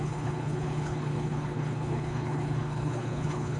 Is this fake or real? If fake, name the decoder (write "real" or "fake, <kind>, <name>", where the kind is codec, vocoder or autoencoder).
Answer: fake, codec, HILCodec